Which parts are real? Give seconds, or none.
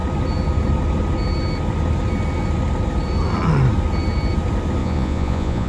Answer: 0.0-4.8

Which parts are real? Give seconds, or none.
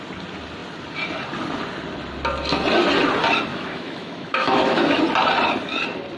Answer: 0.0-3.5; 5.0-6.2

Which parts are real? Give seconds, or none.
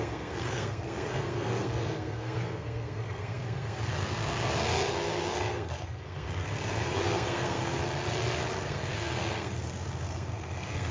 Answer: 7.8-8.6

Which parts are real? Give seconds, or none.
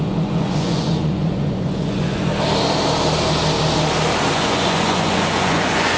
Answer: 2.3-4.3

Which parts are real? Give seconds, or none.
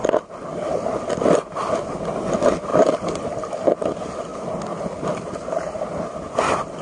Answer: 0.0-6.8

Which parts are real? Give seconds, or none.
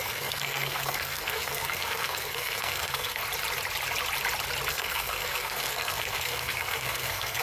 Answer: 3.2-4.7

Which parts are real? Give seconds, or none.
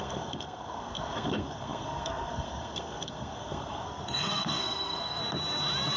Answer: 5.2-6.0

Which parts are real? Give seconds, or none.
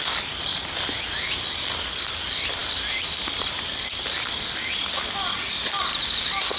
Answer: 0.0-6.6